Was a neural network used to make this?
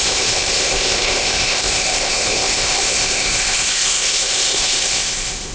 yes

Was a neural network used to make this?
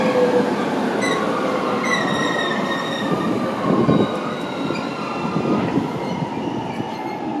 no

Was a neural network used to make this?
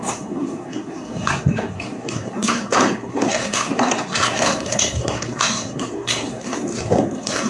yes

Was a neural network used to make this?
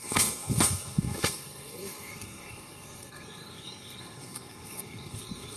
yes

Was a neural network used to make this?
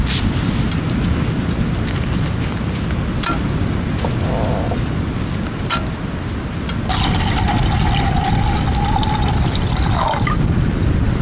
no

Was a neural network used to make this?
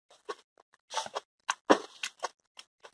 no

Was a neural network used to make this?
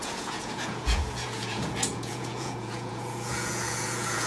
yes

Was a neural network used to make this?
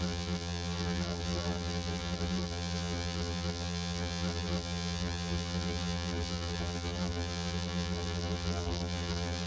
yes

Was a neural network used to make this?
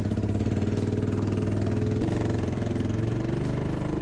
no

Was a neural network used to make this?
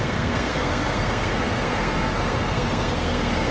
yes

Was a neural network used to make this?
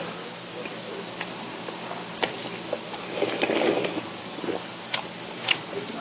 no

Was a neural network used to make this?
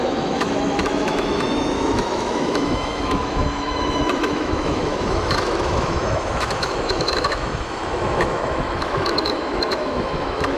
yes